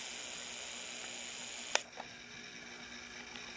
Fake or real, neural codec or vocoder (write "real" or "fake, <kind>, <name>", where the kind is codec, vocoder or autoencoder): real